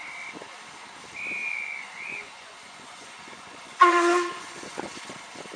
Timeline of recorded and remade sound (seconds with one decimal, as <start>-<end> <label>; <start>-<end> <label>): 0.0-1.4 recorded; 1.4-4.8 remade; 4.8-5.6 recorded